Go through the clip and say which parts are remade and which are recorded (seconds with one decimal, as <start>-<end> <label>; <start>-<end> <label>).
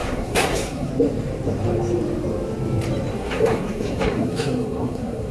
0.0-0.9 remade; 0.9-3.2 recorded; 3.2-5.3 remade